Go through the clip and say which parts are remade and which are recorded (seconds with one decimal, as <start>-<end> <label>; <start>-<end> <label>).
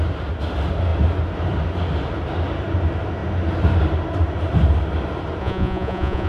0.0-5.4 recorded; 5.4-6.3 remade